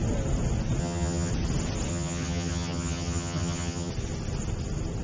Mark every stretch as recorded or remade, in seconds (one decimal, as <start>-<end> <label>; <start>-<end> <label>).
0.0-0.8 recorded; 0.8-1.3 remade; 1.3-1.9 recorded; 1.9-3.9 remade; 3.9-5.0 recorded